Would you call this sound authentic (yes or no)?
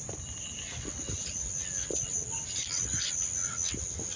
yes